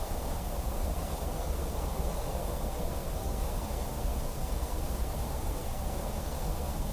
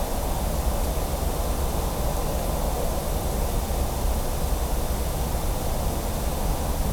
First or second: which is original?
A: second